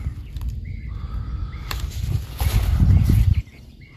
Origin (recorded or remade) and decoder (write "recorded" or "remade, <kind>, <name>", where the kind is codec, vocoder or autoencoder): recorded